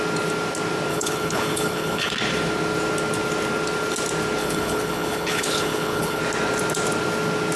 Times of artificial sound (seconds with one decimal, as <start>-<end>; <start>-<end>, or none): 0.9-2.1; 4.4-6.2